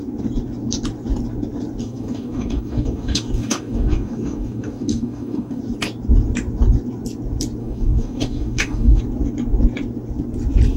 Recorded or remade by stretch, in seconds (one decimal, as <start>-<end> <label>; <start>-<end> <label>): 0.0-1.8 recorded; 1.8-5.6 remade; 5.6-7.6 recorded; 7.6-9.0 remade; 9.0-10.8 recorded